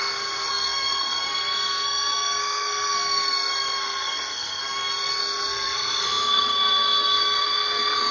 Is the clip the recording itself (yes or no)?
no